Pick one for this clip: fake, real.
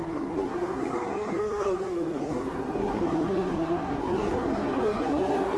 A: fake